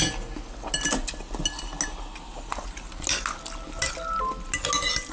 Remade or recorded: recorded